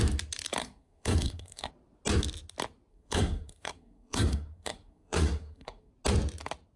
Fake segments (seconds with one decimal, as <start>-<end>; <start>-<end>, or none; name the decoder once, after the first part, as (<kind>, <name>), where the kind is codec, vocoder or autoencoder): 0.6-1.7 (codec, SNAC); 2.9-5.9